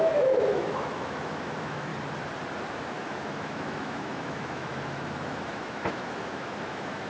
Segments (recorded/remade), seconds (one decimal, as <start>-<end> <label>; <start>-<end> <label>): 0.0-1.9 remade; 1.9-2.7 recorded; 2.7-7.1 remade